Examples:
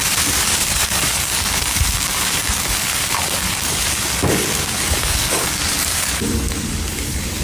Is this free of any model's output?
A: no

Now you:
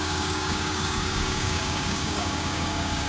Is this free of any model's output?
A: no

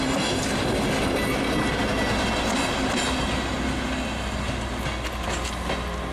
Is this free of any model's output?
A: yes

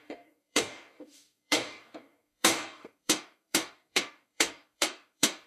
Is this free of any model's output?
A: no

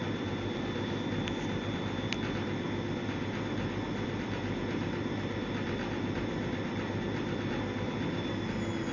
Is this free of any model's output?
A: yes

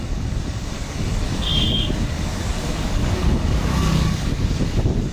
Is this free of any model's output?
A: no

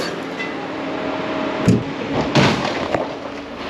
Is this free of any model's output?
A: yes